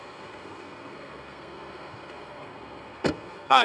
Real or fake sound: fake